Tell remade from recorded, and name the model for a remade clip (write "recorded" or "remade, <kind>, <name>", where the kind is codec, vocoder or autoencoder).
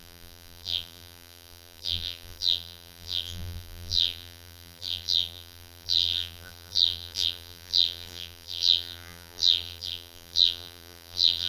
remade, vocoder, BigVGAN v2